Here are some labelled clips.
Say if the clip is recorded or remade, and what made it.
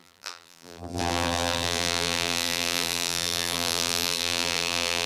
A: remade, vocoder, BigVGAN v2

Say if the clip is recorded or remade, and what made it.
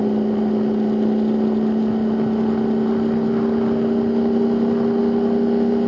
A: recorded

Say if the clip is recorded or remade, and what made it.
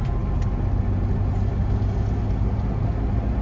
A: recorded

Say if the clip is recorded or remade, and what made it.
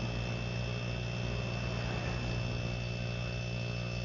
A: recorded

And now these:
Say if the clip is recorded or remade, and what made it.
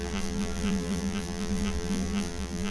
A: remade, vocoder, BigVGAN v2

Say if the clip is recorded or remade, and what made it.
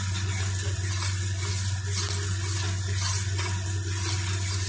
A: recorded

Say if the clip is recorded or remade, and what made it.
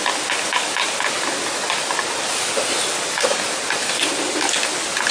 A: recorded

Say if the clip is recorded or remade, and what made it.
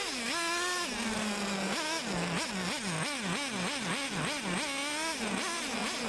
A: recorded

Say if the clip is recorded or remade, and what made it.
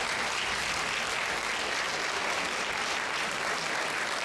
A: recorded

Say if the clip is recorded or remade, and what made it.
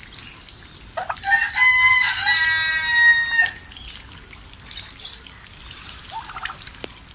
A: recorded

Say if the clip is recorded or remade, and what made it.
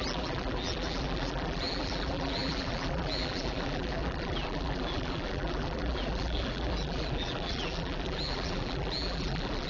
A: remade, vocoder, BigVGAN v2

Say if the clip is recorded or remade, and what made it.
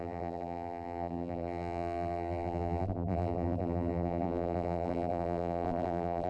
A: remade, vocoder, BigVGAN v2